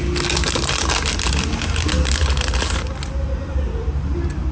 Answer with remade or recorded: recorded